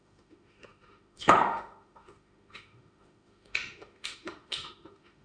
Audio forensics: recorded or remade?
remade